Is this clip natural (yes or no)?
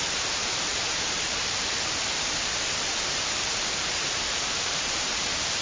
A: no